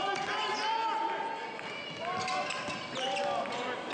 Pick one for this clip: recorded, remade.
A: recorded